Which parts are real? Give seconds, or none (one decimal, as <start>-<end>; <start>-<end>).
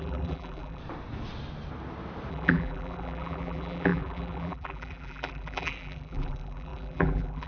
0.8-2.3